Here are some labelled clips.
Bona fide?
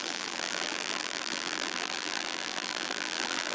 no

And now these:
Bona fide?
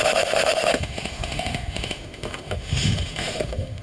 no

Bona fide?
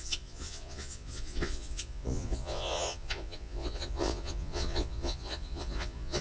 no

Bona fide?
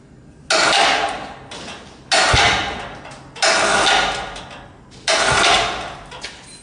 yes